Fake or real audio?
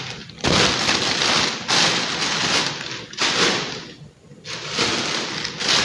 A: real